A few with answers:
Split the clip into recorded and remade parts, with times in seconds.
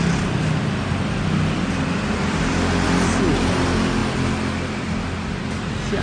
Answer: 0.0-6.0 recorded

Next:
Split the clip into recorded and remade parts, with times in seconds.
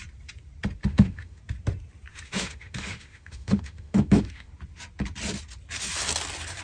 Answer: 0.0-0.8 recorded; 0.8-1.4 remade; 1.4-2.1 recorded; 2.1-4.5 remade; 4.5-6.6 recorded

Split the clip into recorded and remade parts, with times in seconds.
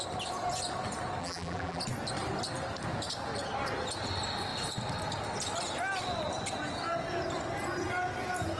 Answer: 0.0-1.2 recorded; 1.2-1.8 remade; 1.8-8.6 recorded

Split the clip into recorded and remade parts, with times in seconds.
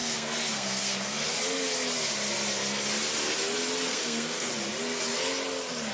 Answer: 0.0-1.3 remade; 1.3-3.9 recorded; 3.9-4.5 remade; 4.5-5.9 recorded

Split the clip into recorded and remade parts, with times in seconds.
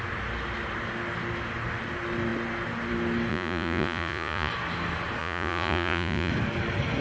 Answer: 0.0-3.3 recorded; 3.3-4.5 remade; 4.5-5.2 recorded; 5.2-6.3 remade; 6.3-7.0 recorded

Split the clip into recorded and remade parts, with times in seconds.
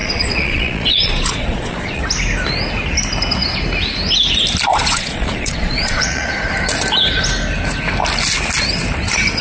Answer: 0.0-2.0 remade; 2.0-4.7 recorded; 4.7-6.5 remade; 6.5-9.4 recorded